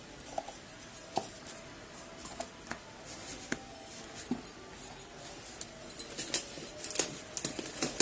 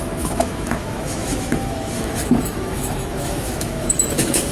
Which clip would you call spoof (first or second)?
second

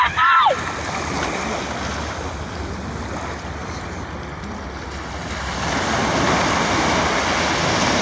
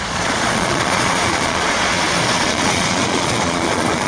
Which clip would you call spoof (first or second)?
second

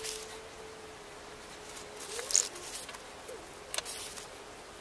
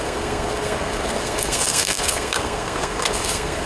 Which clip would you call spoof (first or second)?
second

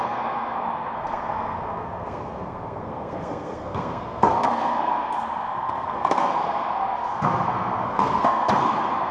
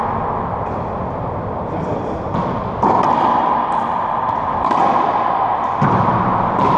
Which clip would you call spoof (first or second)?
first